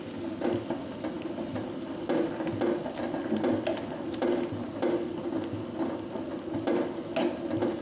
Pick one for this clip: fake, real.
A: real